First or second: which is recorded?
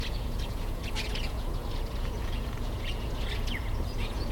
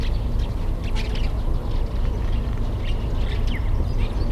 second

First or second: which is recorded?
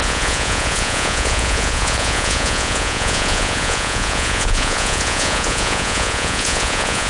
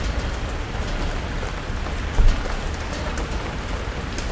second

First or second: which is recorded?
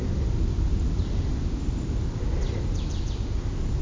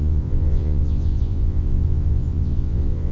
first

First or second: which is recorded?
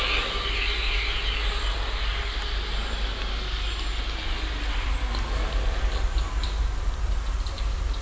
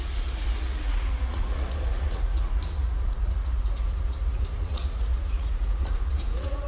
first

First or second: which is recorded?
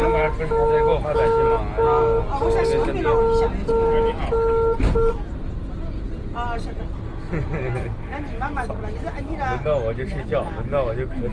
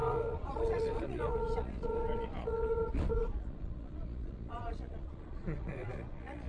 first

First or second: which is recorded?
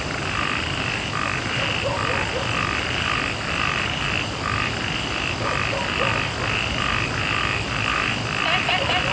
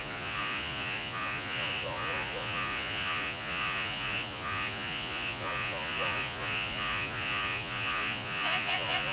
first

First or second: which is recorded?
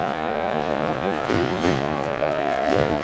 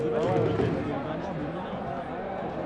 second